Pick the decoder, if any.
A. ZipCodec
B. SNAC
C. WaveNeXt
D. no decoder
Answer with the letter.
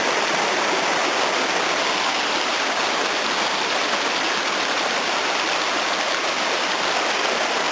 D